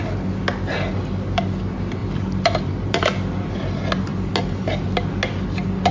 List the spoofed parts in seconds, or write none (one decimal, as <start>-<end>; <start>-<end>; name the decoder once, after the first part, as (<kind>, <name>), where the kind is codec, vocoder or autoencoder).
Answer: 2.0-3.5 (vocoder, BigVGAN v2)